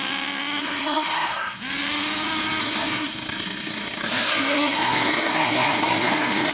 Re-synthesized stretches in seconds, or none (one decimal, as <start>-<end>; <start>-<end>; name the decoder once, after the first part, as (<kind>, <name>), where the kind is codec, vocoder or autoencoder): 0.6-1.6 (codec, SNAC); 2.6-6.5

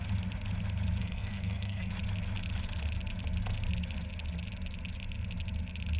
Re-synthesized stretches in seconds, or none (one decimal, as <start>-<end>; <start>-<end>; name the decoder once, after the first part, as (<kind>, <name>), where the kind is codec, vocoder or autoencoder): 1.0-1.9 (codec, SNAC)

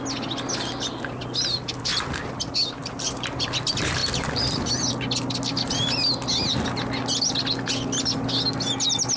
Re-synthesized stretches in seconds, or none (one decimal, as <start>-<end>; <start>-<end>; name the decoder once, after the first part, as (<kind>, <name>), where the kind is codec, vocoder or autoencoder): 2.8-3.5 (vocoder, BigVGAN v2)

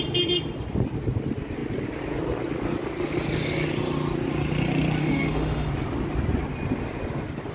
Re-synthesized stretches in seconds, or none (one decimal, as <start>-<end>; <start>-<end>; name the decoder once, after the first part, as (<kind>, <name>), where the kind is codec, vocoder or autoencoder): 5.0-5.7 (autoencoder, DAC-VAE)

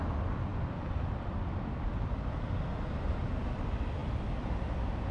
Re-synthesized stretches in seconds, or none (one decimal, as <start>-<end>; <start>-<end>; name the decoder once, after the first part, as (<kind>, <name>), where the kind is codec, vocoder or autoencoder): none

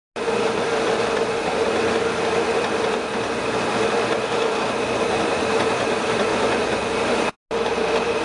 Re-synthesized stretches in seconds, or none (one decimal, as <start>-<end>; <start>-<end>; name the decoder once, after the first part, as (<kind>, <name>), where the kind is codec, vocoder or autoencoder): 6.3-6.9 (vocoder, Vocos)